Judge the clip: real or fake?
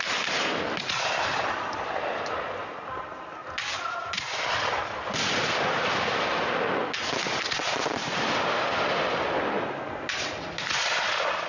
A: real